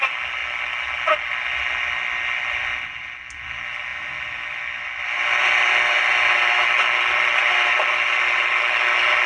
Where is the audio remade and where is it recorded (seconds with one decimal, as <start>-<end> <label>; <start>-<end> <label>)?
0.0-9.3 recorded